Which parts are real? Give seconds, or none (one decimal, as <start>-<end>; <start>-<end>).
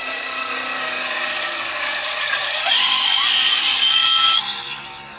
0.0-1.0; 2.7-3.7; 4.4-5.2